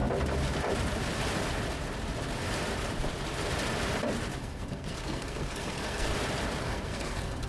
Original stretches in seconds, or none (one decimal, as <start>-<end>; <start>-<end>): 0.0-4.4; 6.1-6.6